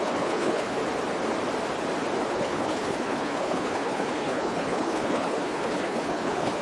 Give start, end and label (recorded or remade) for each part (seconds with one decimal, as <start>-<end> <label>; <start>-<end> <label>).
0.0-0.8 remade; 0.8-2.3 recorded; 2.3-6.6 remade

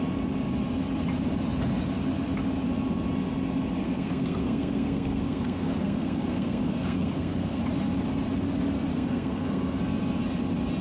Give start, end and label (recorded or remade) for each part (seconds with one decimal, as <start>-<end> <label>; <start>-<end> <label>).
0.0-3.8 recorded; 3.8-7.6 remade; 7.6-8.9 recorded; 8.9-9.8 remade; 9.8-10.8 recorded